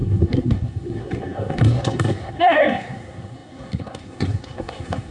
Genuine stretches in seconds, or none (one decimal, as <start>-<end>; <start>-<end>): none

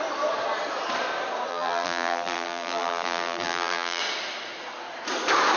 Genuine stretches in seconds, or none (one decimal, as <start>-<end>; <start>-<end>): 0.0-1.5; 4.0-5.6

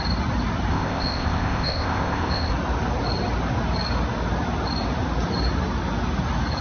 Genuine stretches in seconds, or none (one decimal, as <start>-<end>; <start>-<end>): 0.0-0.7; 2.5-6.6

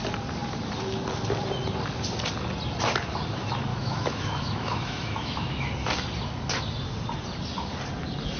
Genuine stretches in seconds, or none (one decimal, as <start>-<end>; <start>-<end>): 0.0-3.7; 5.7-8.4

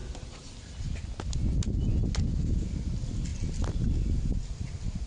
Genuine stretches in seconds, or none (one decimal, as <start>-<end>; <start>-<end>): 0.0-5.1

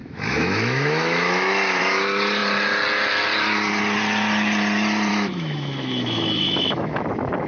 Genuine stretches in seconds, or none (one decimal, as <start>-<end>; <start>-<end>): 1.8-5.1; 7.0-7.5